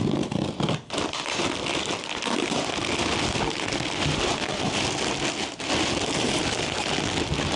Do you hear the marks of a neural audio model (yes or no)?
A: no